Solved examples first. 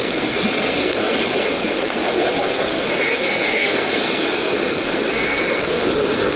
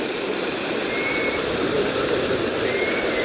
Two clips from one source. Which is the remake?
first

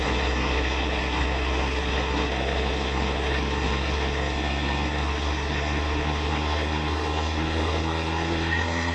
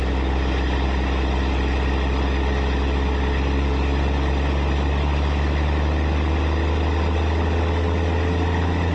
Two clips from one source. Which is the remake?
first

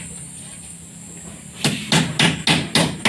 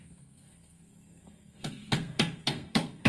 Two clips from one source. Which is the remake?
second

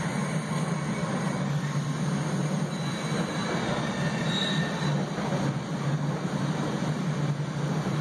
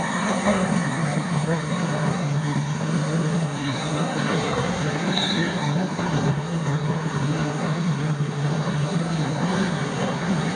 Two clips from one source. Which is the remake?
second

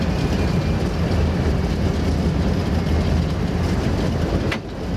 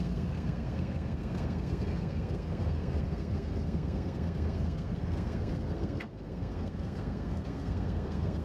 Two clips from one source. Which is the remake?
second